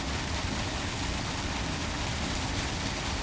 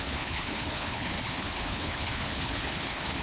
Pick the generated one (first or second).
second